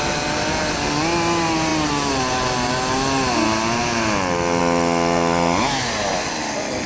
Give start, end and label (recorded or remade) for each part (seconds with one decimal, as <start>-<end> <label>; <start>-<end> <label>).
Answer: 0.0-6.9 recorded